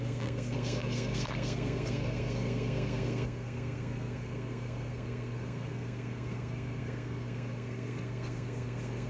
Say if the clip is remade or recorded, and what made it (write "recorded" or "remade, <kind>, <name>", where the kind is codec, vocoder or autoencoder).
remade, codec, SNAC